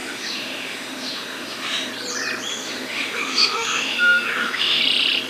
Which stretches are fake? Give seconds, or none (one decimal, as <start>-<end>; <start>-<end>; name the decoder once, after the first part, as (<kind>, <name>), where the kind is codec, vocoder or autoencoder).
0.0-1.9 (autoencoder, DAC-VAE); 2.5-4.8